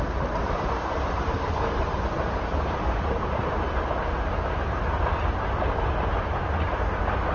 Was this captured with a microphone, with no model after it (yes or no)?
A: yes